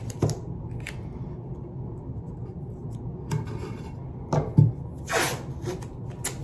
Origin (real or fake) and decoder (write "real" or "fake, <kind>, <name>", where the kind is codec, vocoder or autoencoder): real